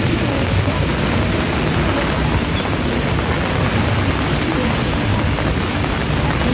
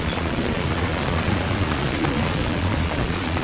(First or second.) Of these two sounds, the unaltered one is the first